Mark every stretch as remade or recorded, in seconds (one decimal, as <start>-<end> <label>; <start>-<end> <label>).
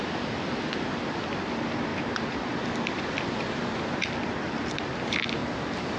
0.0-1.9 recorded; 1.9-3.8 remade; 3.8-5.4 recorded; 5.4-6.0 remade